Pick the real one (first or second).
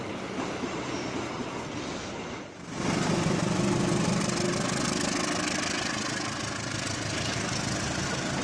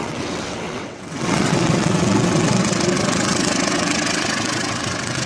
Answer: first